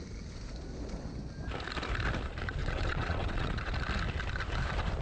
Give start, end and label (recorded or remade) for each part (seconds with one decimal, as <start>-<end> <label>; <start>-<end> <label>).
0.0-2.6 recorded; 2.6-3.7 remade; 3.7-5.0 recorded